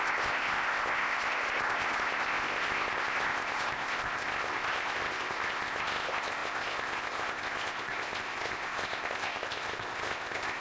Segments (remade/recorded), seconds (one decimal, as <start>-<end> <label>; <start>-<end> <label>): 0.0-10.6 remade